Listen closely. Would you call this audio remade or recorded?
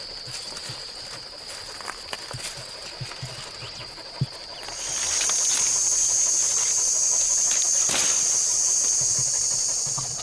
recorded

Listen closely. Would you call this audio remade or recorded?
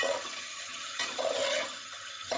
remade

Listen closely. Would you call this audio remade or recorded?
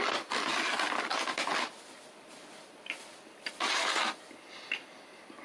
recorded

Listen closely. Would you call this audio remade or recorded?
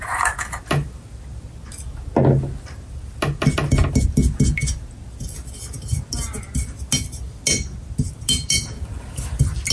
recorded